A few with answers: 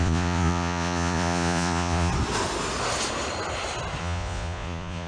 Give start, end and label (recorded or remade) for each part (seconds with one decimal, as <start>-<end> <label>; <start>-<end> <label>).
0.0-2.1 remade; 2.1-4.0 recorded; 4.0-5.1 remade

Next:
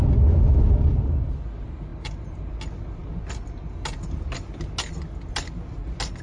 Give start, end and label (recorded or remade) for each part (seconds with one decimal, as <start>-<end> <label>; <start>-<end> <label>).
0.0-6.2 recorded

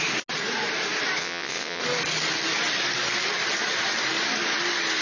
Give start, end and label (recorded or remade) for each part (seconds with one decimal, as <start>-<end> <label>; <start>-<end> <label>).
0.0-1.2 recorded; 1.2-1.8 remade; 1.8-5.0 recorded